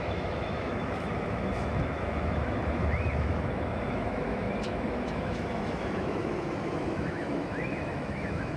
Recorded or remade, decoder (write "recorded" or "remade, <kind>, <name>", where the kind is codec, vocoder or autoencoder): remade, autoencoder, DAC-VAE